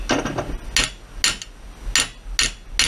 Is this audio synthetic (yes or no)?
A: no